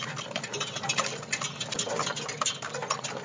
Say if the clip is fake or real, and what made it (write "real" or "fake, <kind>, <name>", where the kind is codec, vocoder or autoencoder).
real